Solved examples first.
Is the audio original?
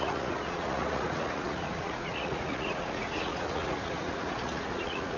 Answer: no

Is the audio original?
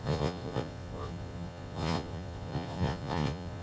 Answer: no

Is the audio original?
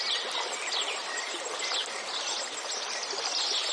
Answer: yes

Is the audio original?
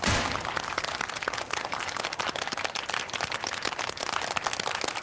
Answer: yes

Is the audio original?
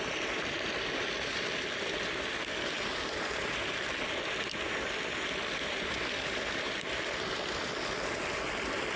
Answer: yes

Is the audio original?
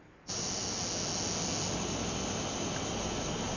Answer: yes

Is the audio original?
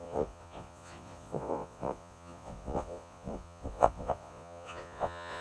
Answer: no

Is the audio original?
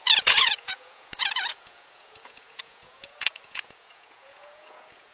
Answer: no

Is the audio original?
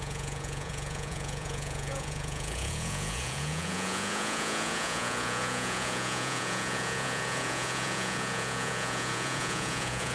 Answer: no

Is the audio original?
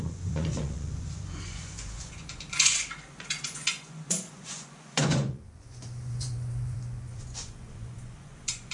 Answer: no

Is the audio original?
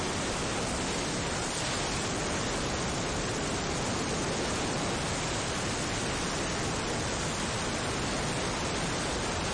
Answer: yes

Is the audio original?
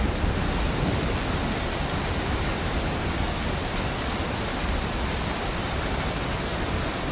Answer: yes